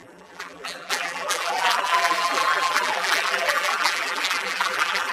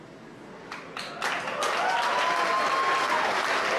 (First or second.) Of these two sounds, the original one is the second